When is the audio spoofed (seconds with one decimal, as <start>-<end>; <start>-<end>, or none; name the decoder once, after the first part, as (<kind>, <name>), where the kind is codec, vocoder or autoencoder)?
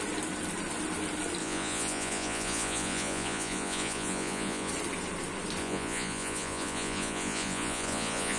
1.4-4.7 (vocoder, Vocos); 5.6-8.4